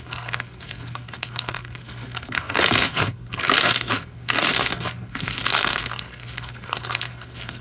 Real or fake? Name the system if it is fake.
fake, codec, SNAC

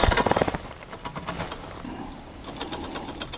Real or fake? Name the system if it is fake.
real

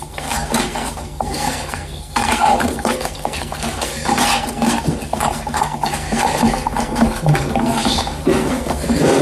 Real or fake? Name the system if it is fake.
fake, codec, SNAC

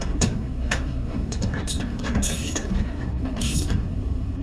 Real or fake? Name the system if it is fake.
fake, codec, SNAC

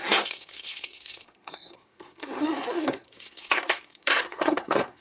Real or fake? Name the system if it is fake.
fake, codec, SNAC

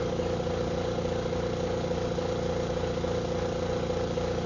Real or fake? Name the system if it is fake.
real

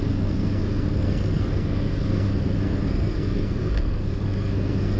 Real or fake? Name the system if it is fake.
fake, codec, SNAC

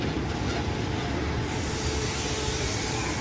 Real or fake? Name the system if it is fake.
real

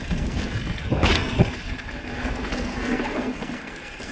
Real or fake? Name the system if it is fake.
fake, codec, SNAC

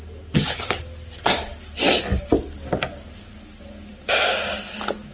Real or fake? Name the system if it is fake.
real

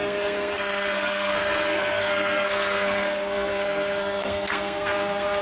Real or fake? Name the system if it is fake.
fake, codec, SNAC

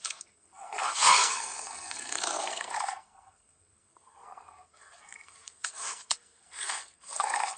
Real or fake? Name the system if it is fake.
fake, codec, SNAC